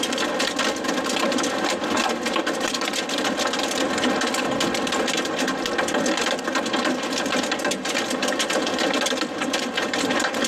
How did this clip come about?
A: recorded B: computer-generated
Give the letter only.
A